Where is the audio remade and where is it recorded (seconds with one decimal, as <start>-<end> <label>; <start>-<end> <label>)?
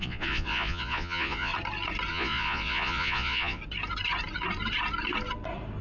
0.0-1.5 remade; 1.5-2.1 recorded; 2.1-3.6 remade; 3.6-5.8 recorded